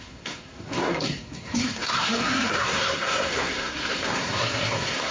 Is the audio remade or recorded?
remade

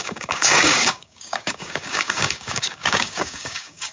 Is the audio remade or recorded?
remade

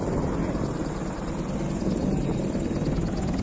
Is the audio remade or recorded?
recorded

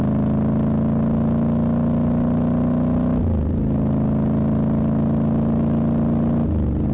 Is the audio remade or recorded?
recorded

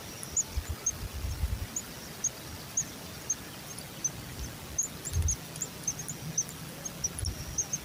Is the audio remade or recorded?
recorded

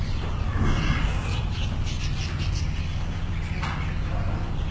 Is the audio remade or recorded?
recorded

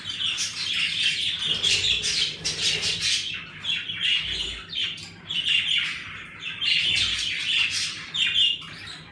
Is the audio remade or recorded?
recorded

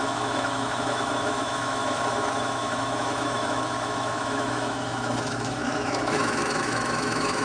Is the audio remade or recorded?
remade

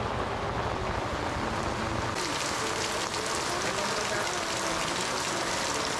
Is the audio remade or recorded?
recorded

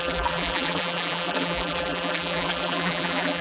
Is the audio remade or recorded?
remade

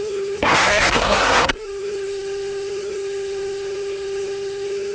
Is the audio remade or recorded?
remade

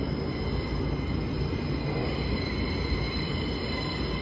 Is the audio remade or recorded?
recorded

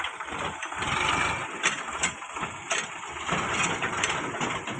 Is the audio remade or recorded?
recorded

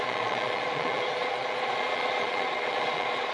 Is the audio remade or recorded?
remade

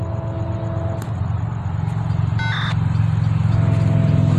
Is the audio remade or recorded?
recorded